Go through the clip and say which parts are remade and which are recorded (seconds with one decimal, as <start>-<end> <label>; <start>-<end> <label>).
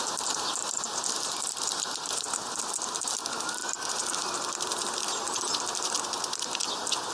0.0-7.1 recorded